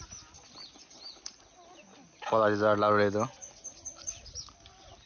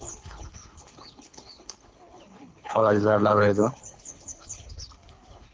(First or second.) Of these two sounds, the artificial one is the second